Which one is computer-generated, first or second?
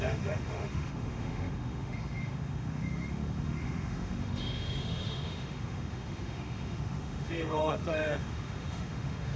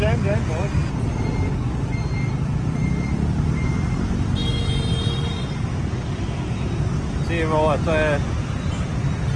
first